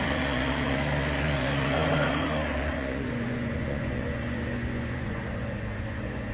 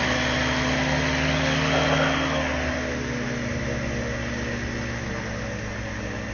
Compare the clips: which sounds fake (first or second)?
first